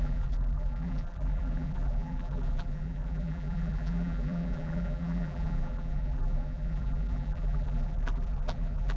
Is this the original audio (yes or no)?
no